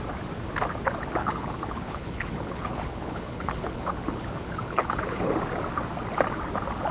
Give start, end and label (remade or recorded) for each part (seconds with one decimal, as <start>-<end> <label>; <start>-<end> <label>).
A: 0.0-1.2 recorded; 1.2-5.3 remade; 5.3-6.9 recorded